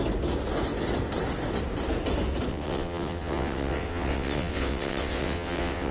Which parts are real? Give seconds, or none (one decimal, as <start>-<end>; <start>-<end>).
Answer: 0.0-2.5